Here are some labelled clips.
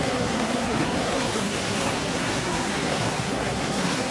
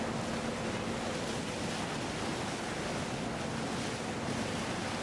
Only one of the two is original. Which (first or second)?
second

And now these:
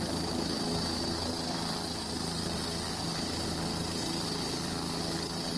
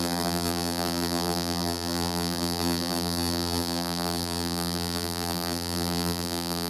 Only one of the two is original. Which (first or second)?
first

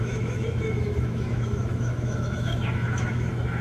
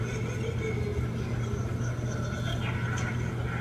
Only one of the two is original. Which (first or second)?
second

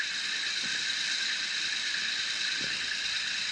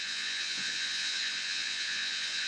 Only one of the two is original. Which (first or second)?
first